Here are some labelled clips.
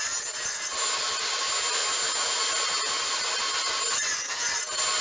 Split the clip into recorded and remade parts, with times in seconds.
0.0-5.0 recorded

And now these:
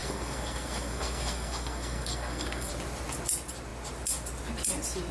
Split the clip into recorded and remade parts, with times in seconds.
0.0-2.7 remade; 2.7-5.1 recorded

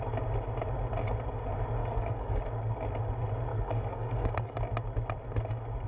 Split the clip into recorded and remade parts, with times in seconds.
0.0-1.8 recorded; 1.8-2.4 remade; 2.4-3.5 recorded; 3.5-4.6 remade; 4.6-5.9 recorded